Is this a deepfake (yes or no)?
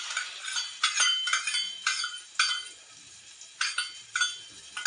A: no